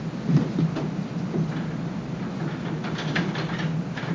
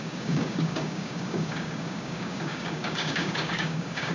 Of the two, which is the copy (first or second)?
second